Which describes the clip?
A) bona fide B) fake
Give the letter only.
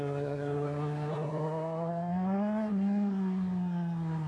B